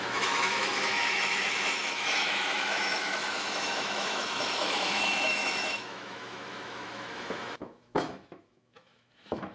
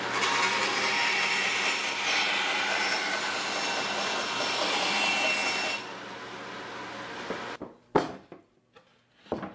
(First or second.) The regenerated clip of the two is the first